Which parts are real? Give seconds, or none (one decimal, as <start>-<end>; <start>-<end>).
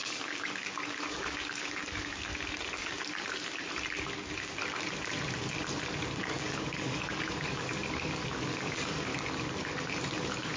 2.3-6.2; 9.1-10.2